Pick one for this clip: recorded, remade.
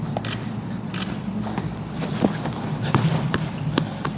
recorded